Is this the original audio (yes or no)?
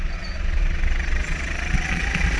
no